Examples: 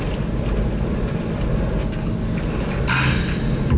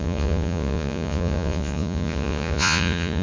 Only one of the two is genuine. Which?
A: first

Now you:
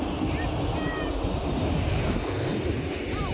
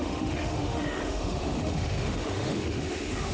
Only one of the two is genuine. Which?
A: first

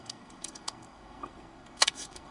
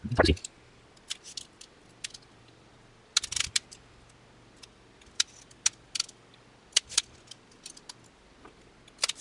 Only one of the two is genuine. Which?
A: second